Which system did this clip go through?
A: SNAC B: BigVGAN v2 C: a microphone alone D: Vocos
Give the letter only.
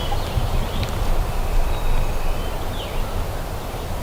B